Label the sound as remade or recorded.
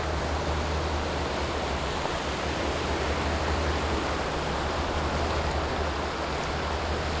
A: recorded